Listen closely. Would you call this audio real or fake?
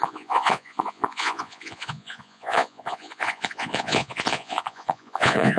fake